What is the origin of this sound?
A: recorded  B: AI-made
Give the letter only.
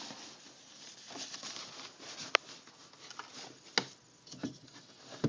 A